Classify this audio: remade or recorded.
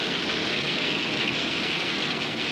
remade